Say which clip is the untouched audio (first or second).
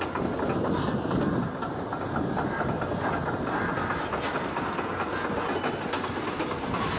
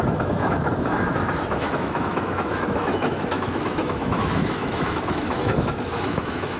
first